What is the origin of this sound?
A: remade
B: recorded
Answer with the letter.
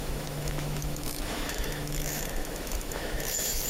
A